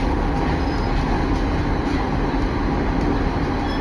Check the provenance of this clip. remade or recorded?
recorded